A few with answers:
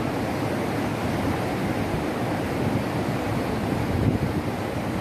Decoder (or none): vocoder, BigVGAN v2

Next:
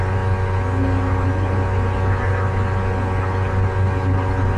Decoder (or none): none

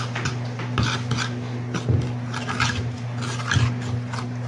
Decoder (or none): none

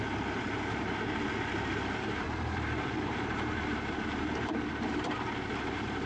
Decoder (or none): vocoder, BigVGAN v2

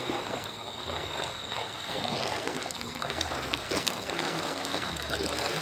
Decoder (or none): codec, SNAC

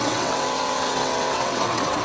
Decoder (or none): vocoder, WaveNeXt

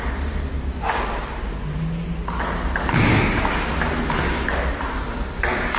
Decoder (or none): none